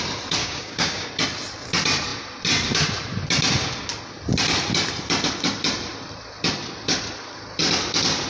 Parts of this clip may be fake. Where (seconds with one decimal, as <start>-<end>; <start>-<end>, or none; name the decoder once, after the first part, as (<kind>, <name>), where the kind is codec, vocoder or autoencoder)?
0.4-1.1 (codec, DAC)